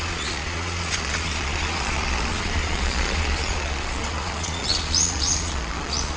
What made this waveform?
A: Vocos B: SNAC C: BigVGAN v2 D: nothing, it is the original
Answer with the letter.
A